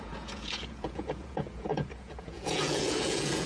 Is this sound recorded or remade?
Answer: remade